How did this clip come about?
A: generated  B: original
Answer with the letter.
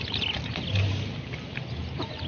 B